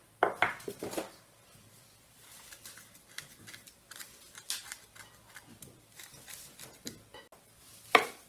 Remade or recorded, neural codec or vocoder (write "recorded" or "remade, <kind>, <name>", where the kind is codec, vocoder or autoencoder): recorded